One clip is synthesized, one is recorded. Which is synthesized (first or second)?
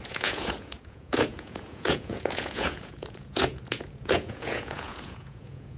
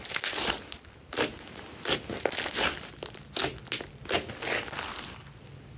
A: first